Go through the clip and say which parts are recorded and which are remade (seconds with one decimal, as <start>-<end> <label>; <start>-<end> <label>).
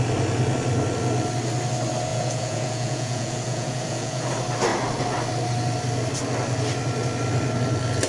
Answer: 0.0-2.1 recorded; 2.1-4.3 remade; 4.3-8.1 recorded